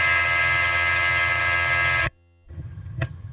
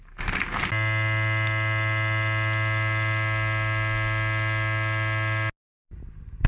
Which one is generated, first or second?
first